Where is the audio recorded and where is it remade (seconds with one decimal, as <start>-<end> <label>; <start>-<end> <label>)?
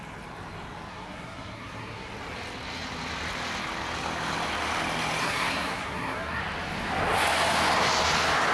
0.0-0.9 recorded; 0.9-2.1 remade; 2.1-5.2 recorded; 5.2-6.4 remade; 6.4-8.5 recorded